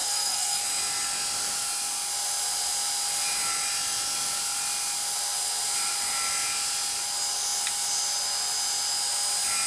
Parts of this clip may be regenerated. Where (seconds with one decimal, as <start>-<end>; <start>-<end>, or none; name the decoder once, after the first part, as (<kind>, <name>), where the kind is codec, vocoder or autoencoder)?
0.0-0.6 (codec, SNAC)